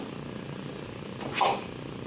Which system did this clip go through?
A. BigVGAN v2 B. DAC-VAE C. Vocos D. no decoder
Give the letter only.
A